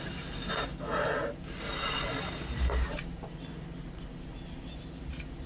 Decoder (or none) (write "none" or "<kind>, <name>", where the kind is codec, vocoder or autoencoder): none